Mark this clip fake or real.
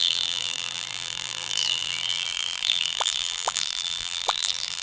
fake